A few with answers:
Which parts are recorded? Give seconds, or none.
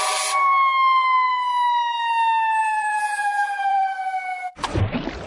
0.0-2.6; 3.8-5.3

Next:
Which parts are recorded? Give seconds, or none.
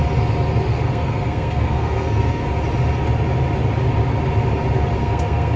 0.0-0.7; 2.4-5.0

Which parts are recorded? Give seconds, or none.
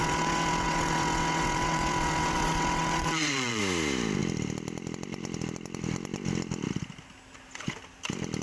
3.6-8.4